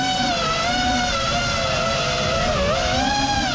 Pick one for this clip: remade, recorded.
recorded